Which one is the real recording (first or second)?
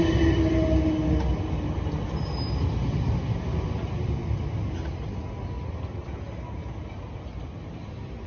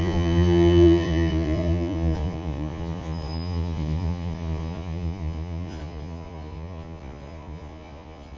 first